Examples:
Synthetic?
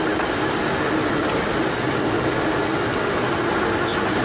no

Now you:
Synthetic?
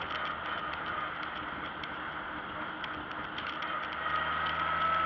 no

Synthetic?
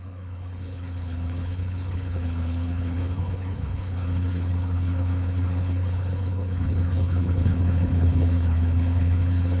yes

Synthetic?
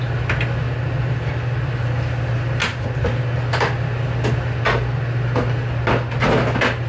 no